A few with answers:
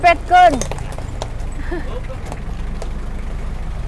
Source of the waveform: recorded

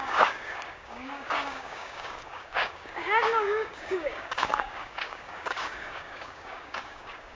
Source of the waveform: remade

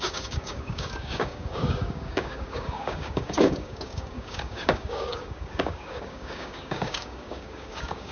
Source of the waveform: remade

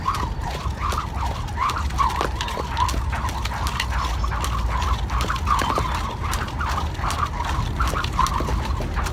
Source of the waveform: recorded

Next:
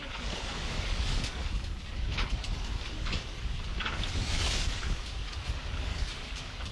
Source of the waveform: remade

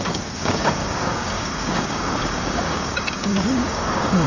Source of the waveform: remade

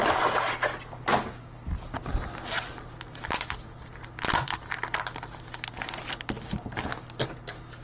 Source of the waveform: recorded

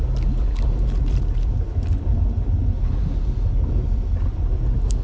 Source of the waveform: recorded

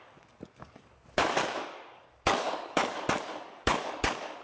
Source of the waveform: remade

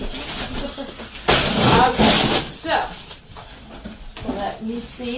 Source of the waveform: recorded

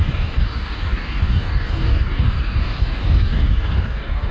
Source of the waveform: remade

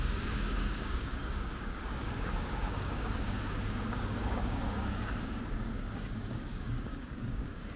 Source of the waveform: remade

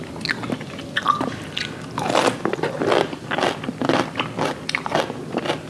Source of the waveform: recorded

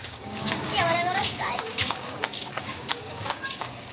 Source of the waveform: remade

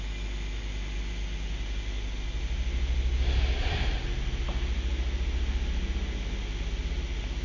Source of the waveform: recorded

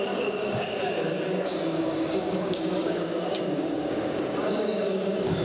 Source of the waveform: remade